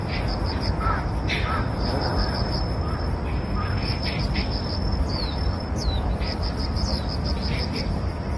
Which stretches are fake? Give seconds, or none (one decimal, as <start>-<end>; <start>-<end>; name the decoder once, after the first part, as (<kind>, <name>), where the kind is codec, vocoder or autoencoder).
0.0-2.1 (vocoder, BigVGAN v2); 4.1-8.4